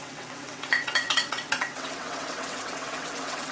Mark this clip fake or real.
fake